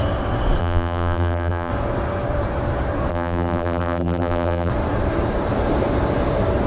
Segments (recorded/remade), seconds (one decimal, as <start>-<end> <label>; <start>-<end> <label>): 0.0-0.6 recorded; 0.6-1.7 remade; 1.7-3.1 recorded; 3.1-4.7 remade; 4.7-6.7 recorded